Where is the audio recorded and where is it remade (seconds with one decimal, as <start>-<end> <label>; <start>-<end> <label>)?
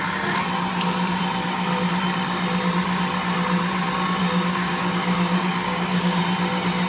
0.0-4.2 recorded; 4.2-6.2 remade; 6.2-6.9 recorded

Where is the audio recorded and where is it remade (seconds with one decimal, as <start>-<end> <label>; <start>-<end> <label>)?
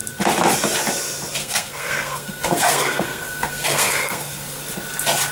0.0-1.4 recorded; 1.4-4.6 remade; 4.6-5.3 recorded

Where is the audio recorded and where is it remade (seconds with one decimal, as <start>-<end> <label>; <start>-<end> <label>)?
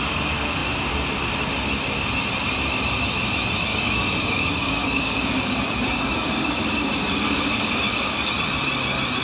0.0-3.7 recorded; 3.7-8.3 remade; 8.3-9.2 recorded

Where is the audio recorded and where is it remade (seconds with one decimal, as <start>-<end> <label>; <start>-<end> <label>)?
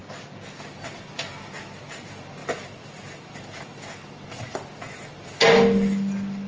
0.0-2.4 recorded; 2.4-3.4 remade; 3.4-4.5 recorded; 4.5-5.0 remade; 5.0-6.5 recorded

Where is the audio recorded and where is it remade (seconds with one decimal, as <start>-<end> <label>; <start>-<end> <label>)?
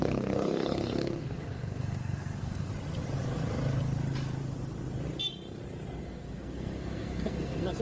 0.0-2.7 remade; 2.7-6.0 recorded; 6.0-7.8 remade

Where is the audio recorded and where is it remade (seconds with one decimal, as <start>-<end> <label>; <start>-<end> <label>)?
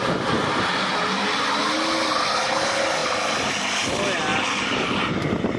0.0-4.3 recorded; 4.3-5.0 remade; 5.0-5.6 recorded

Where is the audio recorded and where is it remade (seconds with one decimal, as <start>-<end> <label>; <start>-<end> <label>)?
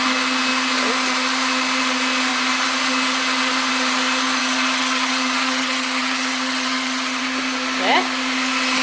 0.0-4.4 recorded; 4.4-7.2 remade; 7.2-8.8 recorded